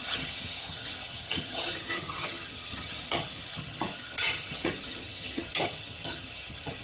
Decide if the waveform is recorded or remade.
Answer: remade